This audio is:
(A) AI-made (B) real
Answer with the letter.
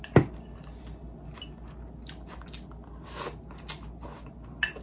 B